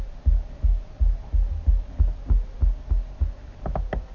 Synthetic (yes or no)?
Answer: no